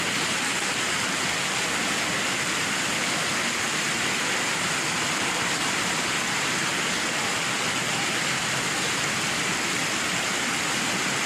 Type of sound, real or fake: real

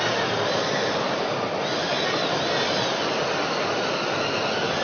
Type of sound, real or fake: real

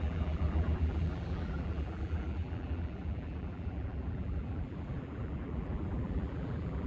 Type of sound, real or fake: fake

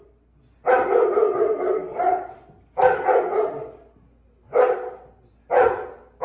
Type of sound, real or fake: real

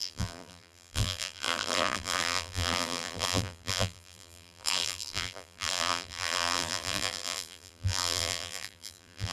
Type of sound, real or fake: fake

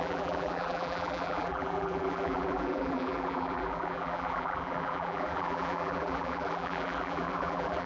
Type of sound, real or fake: fake